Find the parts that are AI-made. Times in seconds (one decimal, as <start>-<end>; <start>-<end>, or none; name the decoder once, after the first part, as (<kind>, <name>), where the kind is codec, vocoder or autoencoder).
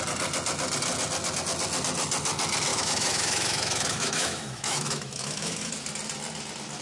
2.7-5.7 (autoencoder, DAC-VAE)